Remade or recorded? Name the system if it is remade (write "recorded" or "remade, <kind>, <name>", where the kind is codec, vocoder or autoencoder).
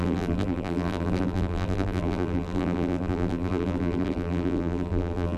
remade, vocoder, BigVGAN v2